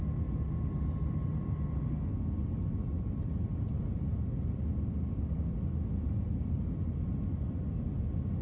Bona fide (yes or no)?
yes